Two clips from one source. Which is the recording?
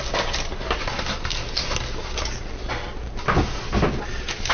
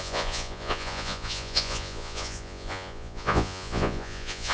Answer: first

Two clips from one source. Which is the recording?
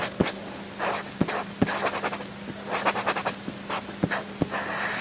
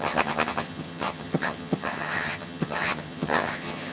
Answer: first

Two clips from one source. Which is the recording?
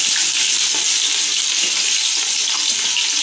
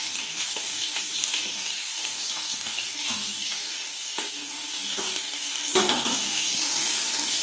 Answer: first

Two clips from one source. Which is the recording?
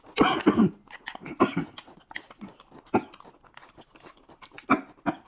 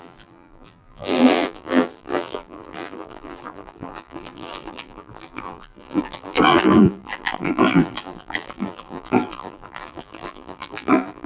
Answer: first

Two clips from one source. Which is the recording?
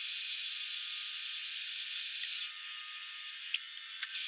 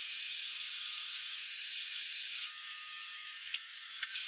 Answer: first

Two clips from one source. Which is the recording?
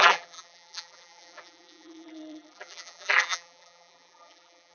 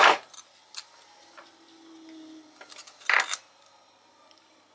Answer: second